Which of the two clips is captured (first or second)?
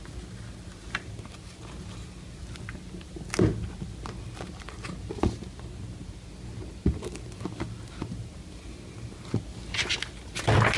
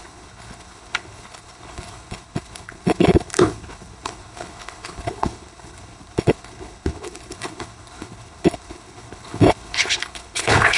first